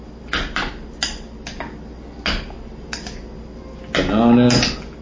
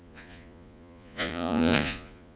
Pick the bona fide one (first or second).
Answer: first